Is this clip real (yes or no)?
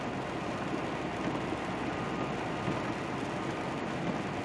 yes